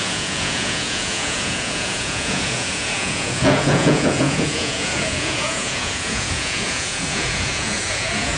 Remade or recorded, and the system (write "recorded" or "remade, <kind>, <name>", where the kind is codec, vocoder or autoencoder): remade, vocoder, Vocos